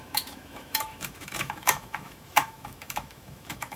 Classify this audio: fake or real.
fake